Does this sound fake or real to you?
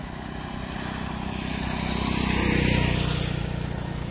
real